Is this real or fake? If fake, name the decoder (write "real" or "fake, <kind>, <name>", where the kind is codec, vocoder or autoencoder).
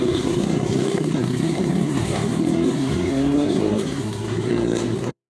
fake, codec, SNAC